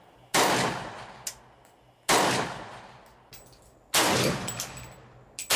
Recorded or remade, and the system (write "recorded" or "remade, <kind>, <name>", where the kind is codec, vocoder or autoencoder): recorded